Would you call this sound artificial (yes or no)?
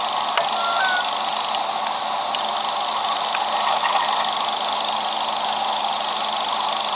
no